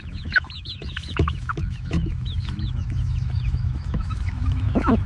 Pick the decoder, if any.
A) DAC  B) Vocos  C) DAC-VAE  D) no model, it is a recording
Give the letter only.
C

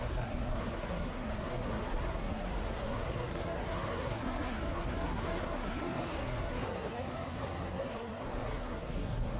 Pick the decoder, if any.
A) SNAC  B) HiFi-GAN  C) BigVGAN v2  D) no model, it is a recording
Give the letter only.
A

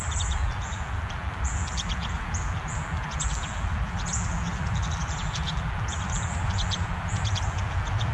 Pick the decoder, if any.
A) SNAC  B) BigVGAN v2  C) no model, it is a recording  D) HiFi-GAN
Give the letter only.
B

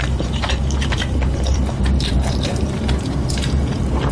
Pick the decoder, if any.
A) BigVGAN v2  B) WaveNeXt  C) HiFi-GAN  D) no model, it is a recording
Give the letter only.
A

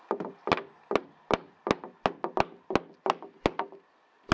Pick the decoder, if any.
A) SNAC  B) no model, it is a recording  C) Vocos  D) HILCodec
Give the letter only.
B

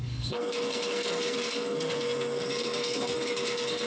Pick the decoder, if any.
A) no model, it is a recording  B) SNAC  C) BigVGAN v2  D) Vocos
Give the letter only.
B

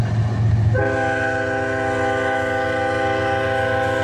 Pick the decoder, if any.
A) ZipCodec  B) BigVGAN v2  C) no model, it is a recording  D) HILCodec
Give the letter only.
C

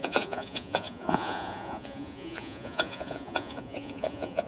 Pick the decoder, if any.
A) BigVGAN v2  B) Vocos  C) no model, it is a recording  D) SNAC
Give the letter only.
B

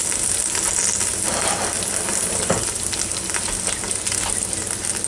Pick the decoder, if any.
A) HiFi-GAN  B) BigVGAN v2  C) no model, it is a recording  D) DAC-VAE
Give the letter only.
C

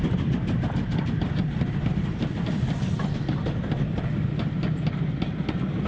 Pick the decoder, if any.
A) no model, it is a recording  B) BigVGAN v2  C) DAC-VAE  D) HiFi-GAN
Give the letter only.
A